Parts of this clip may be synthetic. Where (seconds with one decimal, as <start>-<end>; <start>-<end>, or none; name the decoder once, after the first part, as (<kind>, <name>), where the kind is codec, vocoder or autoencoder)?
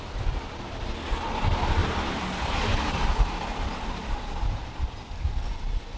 1.8-3.0 (vocoder, BigVGAN v2); 4.6-5.5